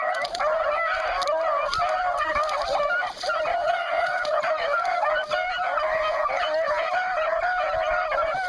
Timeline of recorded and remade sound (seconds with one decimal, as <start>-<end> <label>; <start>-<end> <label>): 0.0-3.6 recorded; 3.6-4.4 remade; 4.4-8.5 recorded